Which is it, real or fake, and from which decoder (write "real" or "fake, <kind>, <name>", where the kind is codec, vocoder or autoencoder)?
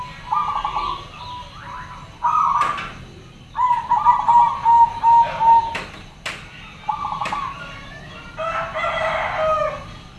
real